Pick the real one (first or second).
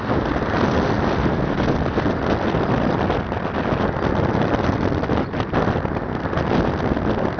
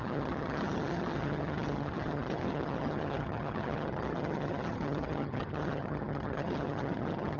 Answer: first